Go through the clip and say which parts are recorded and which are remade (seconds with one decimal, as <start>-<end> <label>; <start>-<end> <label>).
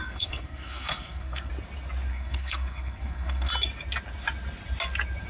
0.0-1.5 remade; 1.5-2.1 recorded; 2.1-3.5 remade; 3.5-5.3 recorded